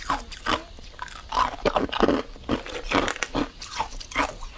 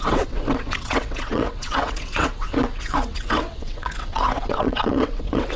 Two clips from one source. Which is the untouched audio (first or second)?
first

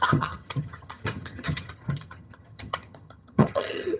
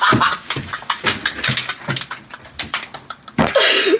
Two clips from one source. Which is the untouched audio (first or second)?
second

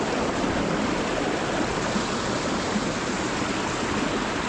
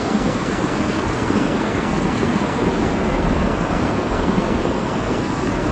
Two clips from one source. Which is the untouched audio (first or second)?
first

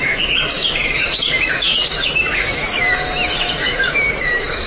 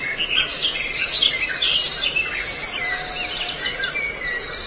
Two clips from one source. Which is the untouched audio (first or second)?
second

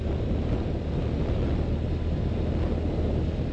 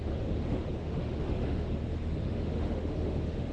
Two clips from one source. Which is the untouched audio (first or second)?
first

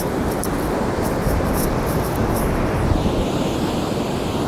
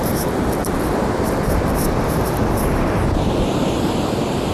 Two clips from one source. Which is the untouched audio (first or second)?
first